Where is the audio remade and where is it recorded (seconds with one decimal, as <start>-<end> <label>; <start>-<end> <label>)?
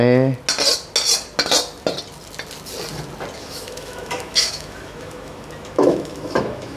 0.0-3.4 recorded; 3.4-6.8 remade